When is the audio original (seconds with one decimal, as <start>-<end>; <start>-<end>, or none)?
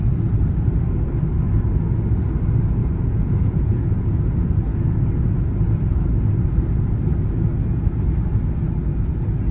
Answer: 0.0-2.8; 4.3-9.5